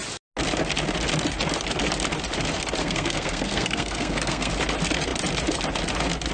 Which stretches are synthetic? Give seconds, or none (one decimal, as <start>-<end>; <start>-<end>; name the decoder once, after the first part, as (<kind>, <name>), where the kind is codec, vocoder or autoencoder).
2.8-4.5 (codec, SNAC)